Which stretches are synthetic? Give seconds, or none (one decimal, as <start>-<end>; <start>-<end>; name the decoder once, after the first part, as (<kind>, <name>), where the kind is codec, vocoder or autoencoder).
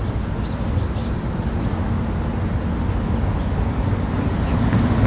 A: none